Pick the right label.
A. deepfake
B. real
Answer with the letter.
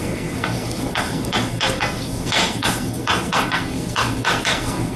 A